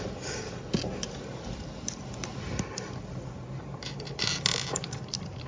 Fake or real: real